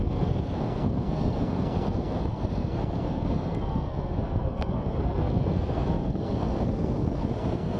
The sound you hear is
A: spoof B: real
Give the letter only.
A